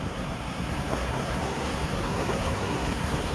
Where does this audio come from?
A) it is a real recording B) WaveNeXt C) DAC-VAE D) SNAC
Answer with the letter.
D